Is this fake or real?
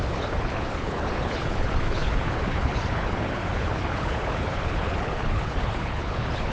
fake